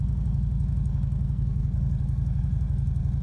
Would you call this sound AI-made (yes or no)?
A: yes